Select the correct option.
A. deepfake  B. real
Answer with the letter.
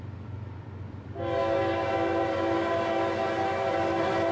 B